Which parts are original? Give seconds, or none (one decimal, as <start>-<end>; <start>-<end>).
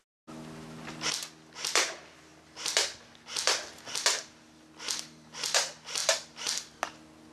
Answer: 0.0-7.3